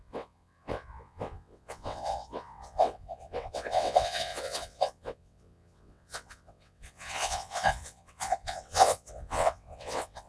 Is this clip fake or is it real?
fake